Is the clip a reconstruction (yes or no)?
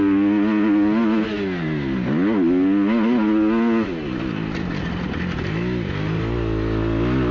no